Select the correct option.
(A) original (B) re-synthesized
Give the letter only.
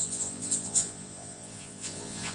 B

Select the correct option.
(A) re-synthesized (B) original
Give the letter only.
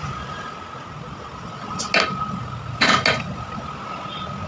B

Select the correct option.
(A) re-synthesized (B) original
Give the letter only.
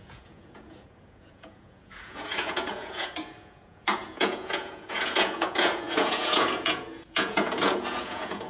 A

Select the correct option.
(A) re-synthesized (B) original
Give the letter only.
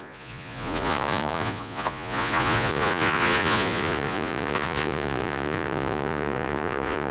A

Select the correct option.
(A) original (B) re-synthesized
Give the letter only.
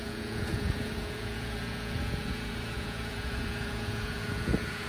B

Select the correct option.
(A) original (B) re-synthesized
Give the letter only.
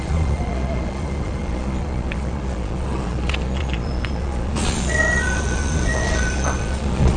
B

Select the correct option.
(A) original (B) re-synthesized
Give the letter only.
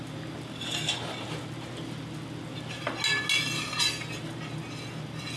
A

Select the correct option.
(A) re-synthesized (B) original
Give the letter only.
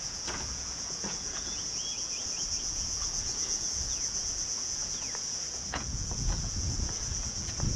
A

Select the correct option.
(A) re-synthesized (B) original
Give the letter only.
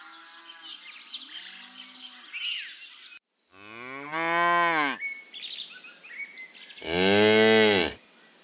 B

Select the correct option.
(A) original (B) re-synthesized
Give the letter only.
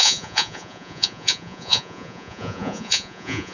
B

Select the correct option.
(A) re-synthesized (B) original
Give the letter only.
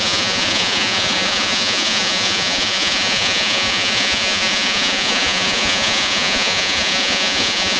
A